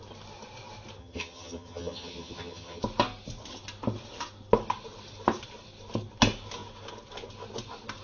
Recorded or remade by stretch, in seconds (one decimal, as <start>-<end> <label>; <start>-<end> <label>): 0.0-1.0 recorded; 1.0-2.8 remade; 2.8-8.0 recorded